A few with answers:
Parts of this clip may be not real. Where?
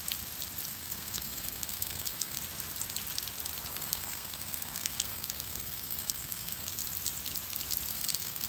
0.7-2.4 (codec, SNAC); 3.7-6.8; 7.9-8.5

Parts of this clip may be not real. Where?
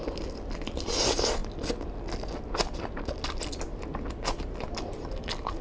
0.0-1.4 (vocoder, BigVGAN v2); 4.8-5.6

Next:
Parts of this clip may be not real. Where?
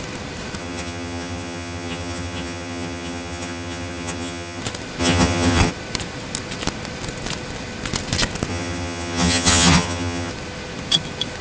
0.6-4.6 (vocoder, HiFi-GAN); 5.0-5.7; 8.5-10.3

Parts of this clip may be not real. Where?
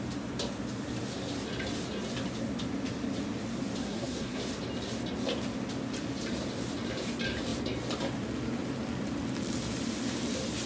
3.8-4.4 (codec, SNAC)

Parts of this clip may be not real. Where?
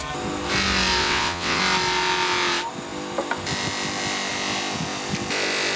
1.0-1.6 (vocoder, WaveNeXt)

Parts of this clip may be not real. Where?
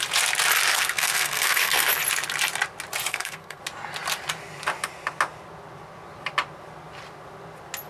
0.7-1.9 (codec, SNAC); 3.1-3.6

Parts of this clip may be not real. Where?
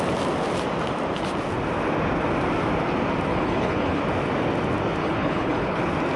3.3-4.0 (codec, HILCodec); 5.0-5.8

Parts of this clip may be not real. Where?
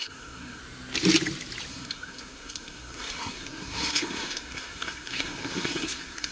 0.0-0.6 (codec, SNAC); 1.7-6.3